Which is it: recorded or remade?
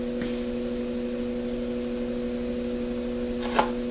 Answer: recorded